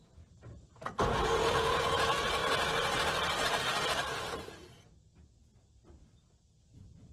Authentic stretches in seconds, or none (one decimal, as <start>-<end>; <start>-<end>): 2.4-6.6